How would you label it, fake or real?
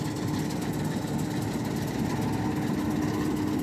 real